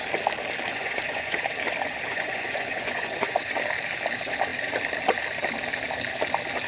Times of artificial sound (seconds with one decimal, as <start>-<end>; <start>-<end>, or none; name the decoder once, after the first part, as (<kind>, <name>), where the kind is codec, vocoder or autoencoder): 0.7-1.4 (vocoder, Vocos); 2.1-3.5